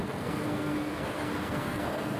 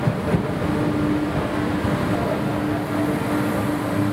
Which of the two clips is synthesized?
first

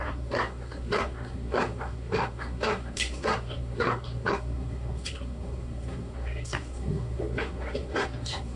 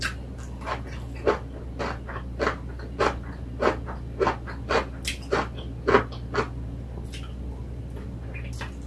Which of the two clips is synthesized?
first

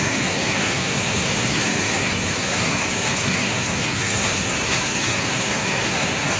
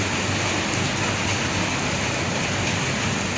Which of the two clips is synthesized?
first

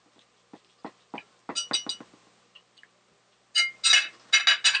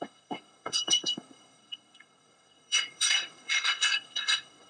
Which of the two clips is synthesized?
second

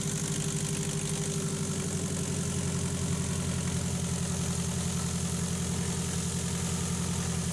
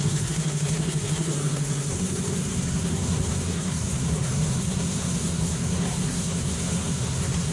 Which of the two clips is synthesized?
second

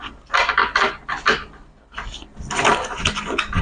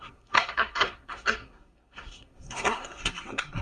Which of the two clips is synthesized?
second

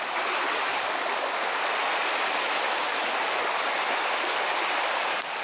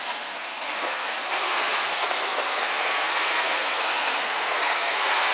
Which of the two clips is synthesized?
second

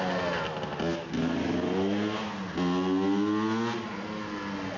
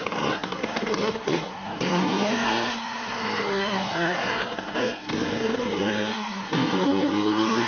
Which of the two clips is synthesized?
second